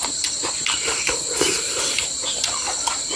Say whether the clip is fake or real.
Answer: fake